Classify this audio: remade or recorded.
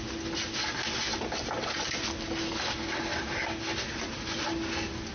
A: recorded